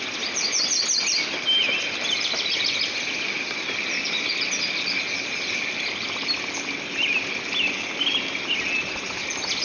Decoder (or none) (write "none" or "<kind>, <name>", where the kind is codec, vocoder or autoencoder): none